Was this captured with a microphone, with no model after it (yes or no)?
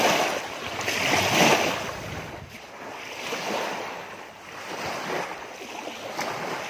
yes